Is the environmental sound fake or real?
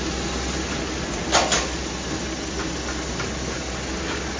real